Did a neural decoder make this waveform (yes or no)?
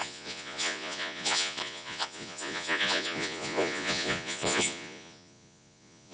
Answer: yes